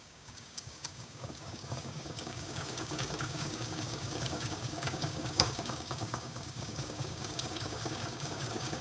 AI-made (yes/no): yes